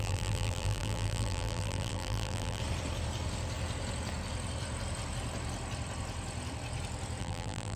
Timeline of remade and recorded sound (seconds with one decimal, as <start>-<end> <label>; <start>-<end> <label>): 0.0-2.6 remade; 2.6-7.2 recorded; 7.2-7.8 remade